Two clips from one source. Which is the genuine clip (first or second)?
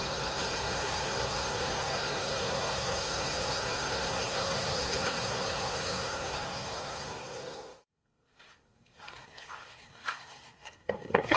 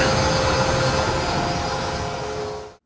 second